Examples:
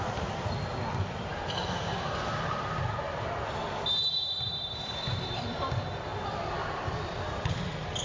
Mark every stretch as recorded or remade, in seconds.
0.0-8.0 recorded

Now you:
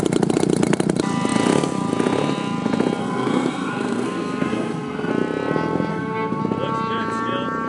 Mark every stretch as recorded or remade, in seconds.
0.0-3.0 recorded; 3.0-5.1 remade; 5.1-5.9 recorded; 5.9-6.4 remade; 6.4-7.7 recorded

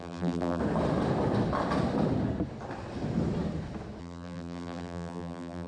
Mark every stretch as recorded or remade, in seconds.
0.0-0.6 remade; 0.6-4.0 recorded; 4.0-5.7 remade